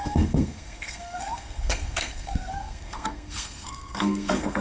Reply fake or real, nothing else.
fake